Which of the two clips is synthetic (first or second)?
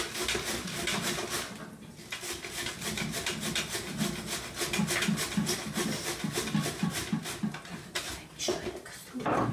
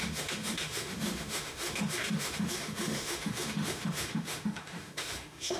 second